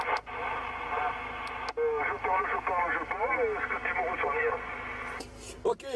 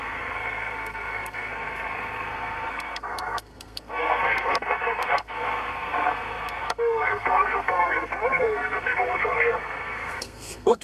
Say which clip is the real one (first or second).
first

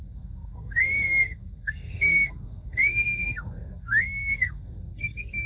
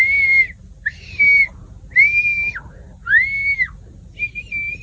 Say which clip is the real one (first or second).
second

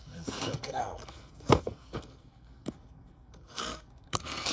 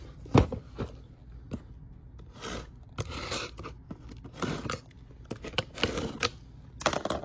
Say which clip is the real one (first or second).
second